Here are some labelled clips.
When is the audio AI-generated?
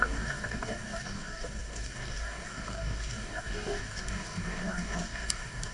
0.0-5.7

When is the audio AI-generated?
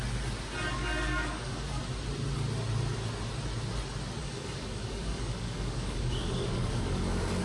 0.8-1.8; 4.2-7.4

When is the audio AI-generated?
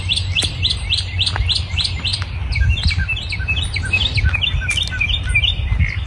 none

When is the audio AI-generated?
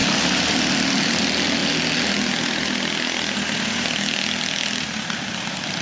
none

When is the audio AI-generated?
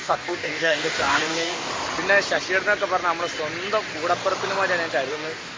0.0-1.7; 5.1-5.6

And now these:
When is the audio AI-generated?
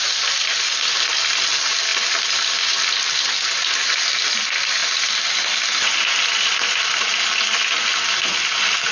none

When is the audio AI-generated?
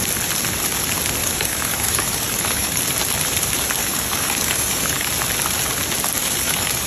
1.2-2.8; 3.8-5.1; 6.2-6.9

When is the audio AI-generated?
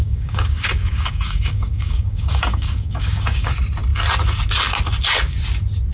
0.0-3.5